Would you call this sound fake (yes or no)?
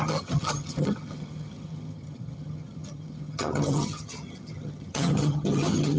yes